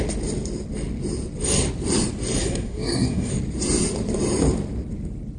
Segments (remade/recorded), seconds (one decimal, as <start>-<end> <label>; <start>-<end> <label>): 0.0-2.4 recorded; 2.4-3.3 remade; 3.3-5.4 recorded